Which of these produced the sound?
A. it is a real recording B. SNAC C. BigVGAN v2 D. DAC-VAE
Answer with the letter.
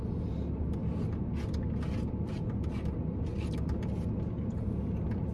A